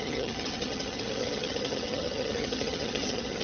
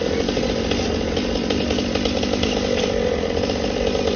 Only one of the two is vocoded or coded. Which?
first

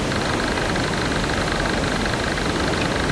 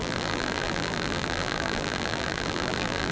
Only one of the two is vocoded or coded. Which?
second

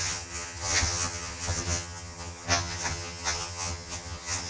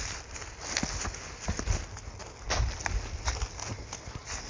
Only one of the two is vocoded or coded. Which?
first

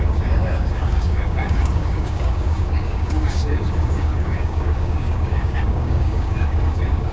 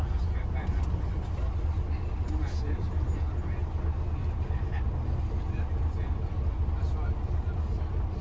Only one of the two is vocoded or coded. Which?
first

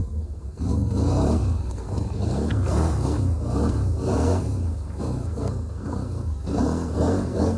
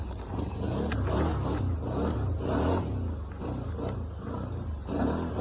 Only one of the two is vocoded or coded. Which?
first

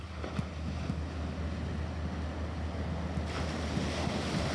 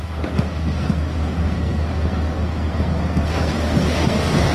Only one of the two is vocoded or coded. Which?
second